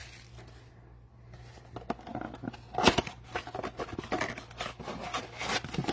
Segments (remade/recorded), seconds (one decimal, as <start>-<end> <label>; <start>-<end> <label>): 0.0-5.9 recorded